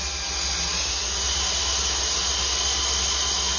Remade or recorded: recorded